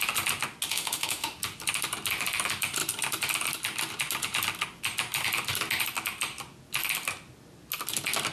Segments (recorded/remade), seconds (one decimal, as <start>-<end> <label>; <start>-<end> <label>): 0.0-0.7 recorded; 0.7-1.4 remade; 1.4-8.3 recorded